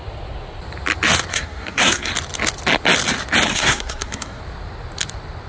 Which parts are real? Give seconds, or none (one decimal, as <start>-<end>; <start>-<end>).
0.0-1.3; 2.1-3.5; 4.4-5.5